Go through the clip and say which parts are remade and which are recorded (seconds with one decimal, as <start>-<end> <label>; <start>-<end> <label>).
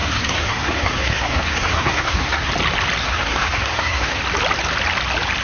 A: 0.0-2.5 remade; 2.5-3.0 recorded; 3.0-4.2 remade; 4.2-5.4 recorded